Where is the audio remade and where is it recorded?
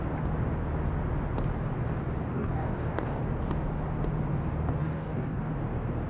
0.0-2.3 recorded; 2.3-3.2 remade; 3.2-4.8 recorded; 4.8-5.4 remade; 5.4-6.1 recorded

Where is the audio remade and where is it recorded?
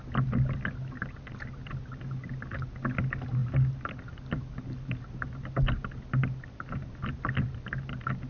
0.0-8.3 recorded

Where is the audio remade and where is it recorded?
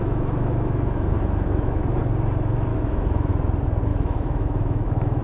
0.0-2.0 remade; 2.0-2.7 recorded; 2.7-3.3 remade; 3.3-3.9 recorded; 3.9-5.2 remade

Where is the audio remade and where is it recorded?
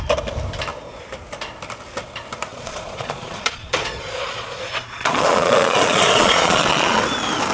0.0-2.5 recorded; 2.5-7.0 remade; 7.0-7.5 recorded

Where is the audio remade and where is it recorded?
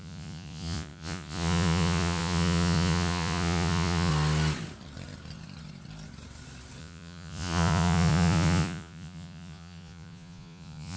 0.0-4.1 remade; 4.1-6.8 recorded; 6.8-11.0 remade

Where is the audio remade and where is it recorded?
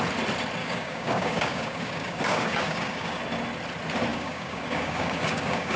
0.0-0.6 recorded; 0.6-3.2 remade; 3.2-4.1 recorded; 4.1-5.8 remade